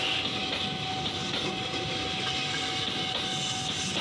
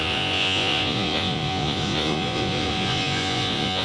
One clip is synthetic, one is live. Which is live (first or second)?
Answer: first